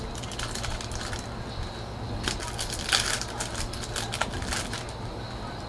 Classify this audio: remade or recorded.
recorded